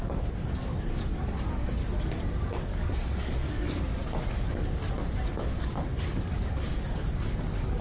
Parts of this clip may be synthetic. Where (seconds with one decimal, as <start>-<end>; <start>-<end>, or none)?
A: 0.0-1.8; 2.6-3.9; 5.4-7.8